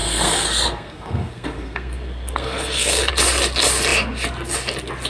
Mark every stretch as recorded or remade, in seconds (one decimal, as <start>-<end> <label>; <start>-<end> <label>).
0.0-3.1 remade; 3.1-5.1 recorded